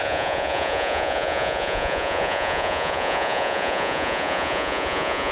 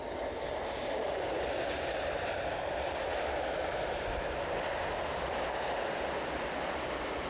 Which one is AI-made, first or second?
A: first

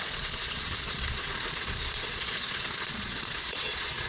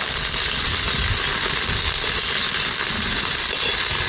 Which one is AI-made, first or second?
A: first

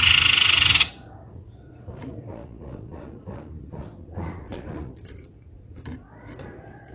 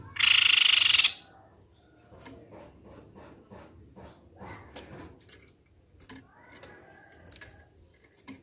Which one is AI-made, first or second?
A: first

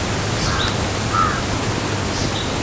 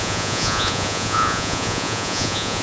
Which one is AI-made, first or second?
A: second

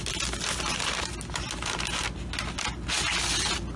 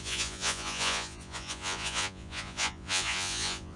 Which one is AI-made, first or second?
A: second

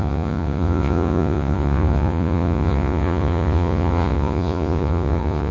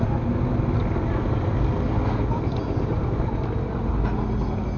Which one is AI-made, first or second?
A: first